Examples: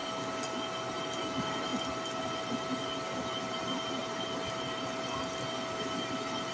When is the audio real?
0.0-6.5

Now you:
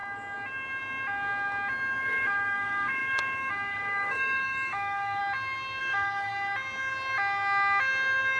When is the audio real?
0.0-2.0; 5.2-5.8; 6.3-8.4

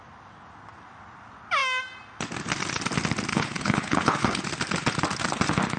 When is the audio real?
0.0-3.3; 4.4-5.8

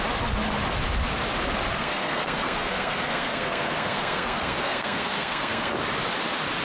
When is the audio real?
0.0-1.7; 5.7-6.6

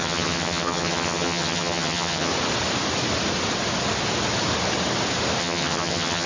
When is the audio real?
2.3-5.4

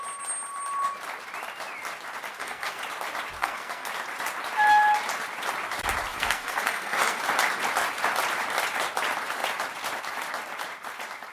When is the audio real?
0.0-2.3; 2.8-3.4; 3.9-6.1; 7.2-11.3